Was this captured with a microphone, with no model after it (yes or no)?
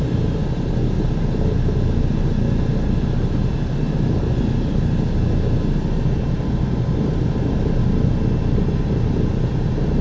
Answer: yes